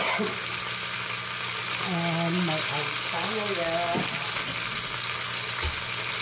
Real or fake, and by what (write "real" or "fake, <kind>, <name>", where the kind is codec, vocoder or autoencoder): real